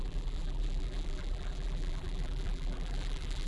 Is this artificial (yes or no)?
yes